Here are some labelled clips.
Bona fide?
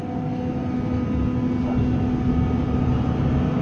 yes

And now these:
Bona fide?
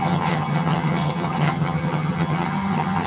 no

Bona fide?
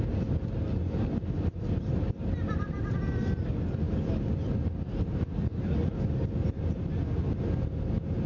yes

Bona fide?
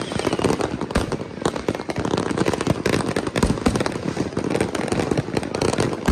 yes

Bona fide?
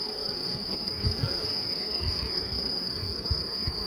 no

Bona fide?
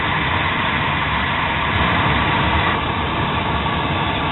yes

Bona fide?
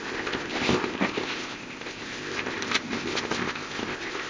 no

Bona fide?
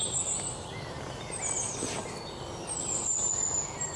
yes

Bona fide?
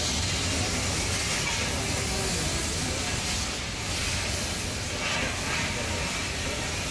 yes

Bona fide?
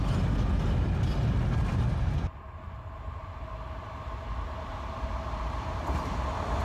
yes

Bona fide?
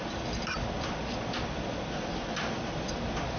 yes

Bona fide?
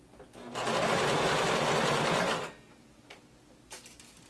yes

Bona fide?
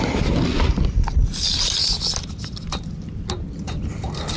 yes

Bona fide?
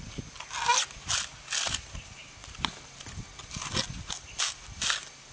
yes